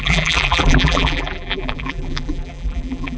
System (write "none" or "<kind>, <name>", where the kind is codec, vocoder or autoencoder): vocoder, BigVGAN v2